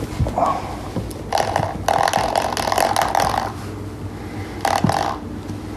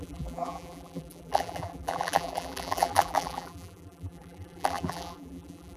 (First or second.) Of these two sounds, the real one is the first